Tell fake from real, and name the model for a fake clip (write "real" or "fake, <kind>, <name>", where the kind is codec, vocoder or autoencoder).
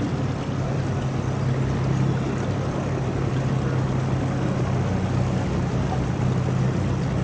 real